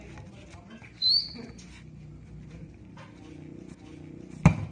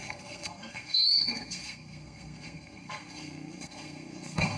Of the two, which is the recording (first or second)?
first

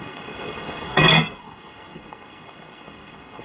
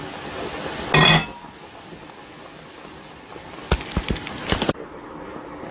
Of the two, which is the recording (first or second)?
second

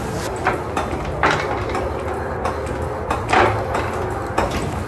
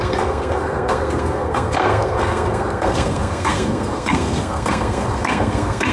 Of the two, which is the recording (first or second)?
first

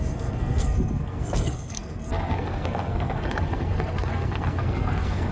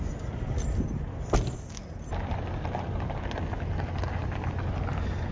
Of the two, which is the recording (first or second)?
second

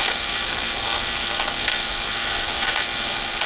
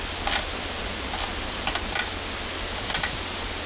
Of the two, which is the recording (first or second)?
second